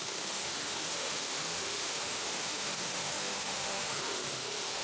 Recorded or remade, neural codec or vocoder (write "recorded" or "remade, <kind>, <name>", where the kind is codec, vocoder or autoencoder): remade, autoencoder, DAC-VAE